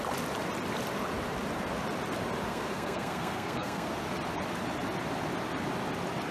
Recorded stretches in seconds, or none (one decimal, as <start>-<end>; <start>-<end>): 0.0-2.5; 3.9-6.3